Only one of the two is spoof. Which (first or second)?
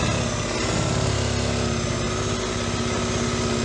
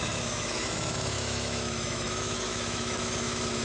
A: second